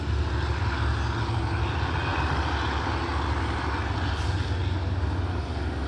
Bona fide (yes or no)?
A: yes